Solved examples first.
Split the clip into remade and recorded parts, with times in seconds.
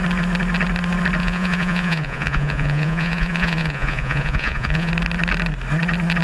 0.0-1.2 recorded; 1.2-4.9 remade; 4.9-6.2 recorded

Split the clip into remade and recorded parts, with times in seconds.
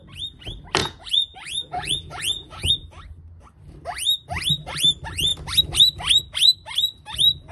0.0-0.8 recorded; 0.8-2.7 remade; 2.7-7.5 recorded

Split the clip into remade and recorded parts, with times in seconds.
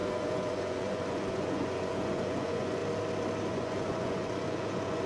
0.0-2.8 remade; 2.8-3.5 recorded; 3.5-5.1 remade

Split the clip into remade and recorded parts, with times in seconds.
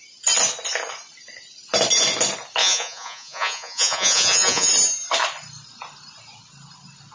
0.0-2.6 recorded; 2.6-4.7 remade; 4.7-7.1 recorded